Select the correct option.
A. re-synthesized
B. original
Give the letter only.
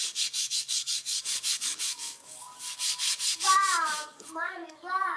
A